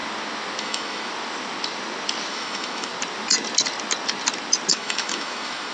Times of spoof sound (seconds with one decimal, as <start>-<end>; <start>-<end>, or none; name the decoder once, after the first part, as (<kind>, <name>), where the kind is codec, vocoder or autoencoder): 0.6-1.1 (autoencoder, DAC-VAE); 2.3-2.9; 4.7-5.7